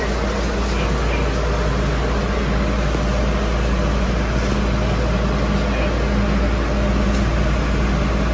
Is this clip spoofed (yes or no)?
no